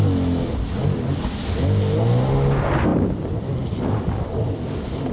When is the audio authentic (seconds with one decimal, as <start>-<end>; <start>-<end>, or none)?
0.0-2.9